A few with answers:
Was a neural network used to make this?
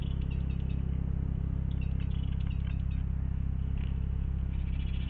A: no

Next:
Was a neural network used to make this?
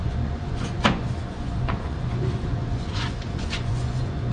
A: yes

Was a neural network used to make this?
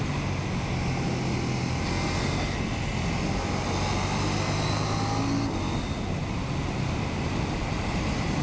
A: no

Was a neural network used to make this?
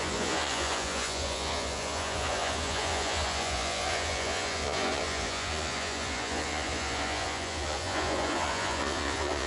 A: yes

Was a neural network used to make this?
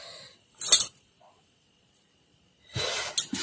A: no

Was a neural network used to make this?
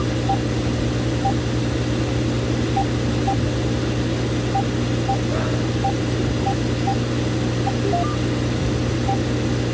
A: no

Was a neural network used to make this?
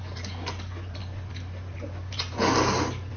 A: no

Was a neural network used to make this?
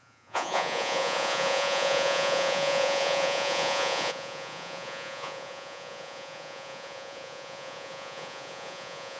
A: yes